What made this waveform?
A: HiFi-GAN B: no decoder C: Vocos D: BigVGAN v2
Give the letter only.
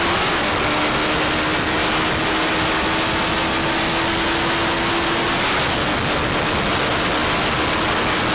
B